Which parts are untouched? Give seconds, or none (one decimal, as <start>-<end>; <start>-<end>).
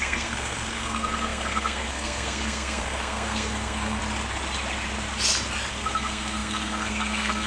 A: 4.0-5.7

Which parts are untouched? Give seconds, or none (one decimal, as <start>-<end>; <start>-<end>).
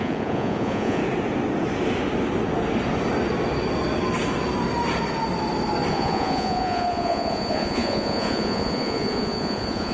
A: 1.0-5.9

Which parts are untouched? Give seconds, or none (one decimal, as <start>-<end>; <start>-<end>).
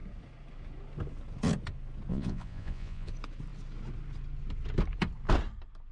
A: 0.0-2.1; 3.1-5.9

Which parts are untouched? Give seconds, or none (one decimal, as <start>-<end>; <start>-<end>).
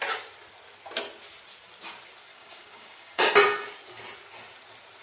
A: 0.0-2.3; 3.3-5.0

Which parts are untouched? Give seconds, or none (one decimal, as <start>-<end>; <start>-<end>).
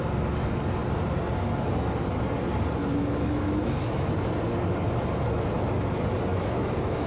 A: 0.0-2.8; 4.1-6.3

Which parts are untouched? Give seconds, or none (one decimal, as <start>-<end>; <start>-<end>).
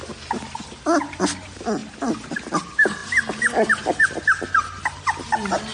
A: 0.0-5.7